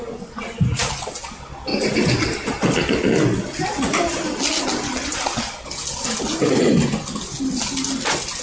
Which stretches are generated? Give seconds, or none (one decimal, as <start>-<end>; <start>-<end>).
none